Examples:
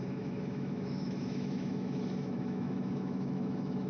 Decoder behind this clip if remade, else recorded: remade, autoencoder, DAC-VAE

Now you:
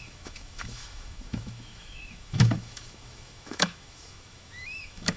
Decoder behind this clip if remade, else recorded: remade, autoencoder, DAC-VAE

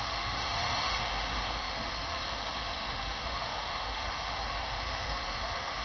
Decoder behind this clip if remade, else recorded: remade, autoencoder, DAC-VAE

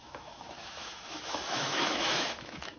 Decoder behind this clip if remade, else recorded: remade, autoencoder, DAC-VAE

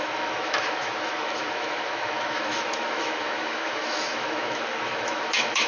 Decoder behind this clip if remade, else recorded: remade, autoencoder, DAC-VAE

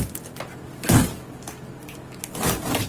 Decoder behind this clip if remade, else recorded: recorded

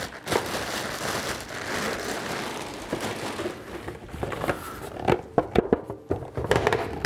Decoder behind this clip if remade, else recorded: recorded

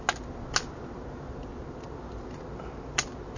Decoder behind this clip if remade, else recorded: recorded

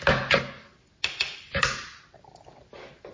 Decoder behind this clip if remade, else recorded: recorded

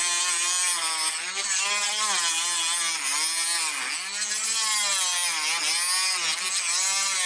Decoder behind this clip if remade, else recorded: recorded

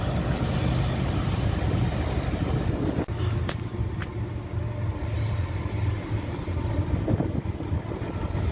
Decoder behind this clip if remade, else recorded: recorded